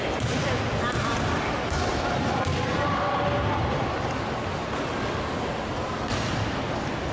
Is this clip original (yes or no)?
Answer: yes